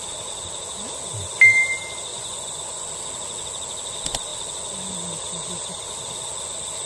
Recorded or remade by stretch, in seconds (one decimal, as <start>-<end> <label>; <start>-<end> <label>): 0.0-2.1 recorded; 2.1-2.9 remade; 2.9-6.9 recorded